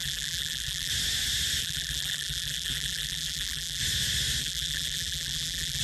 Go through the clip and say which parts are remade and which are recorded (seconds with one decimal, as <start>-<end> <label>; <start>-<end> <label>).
0.0-0.9 remade; 0.9-1.6 recorded; 1.6-3.8 remade; 3.8-4.4 recorded; 4.4-5.8 remade